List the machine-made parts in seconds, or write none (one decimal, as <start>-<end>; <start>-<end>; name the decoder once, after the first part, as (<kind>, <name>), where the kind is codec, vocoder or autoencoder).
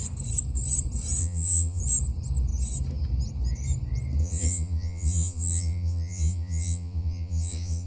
1.2-1.8 (vocoder, Vocos); 4.2-7.9